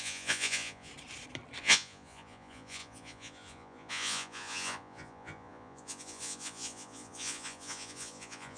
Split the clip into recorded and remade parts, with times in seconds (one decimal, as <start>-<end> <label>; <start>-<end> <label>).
0.0-0.9 remade; 0.9-1.6 recorded; 1.6-8.6 remade